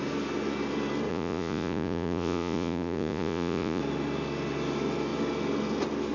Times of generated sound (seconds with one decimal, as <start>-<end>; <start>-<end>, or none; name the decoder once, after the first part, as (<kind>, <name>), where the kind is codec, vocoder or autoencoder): 1.1-3.8 (vocoder, Vocos)